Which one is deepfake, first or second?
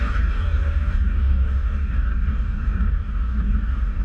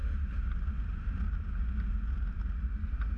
first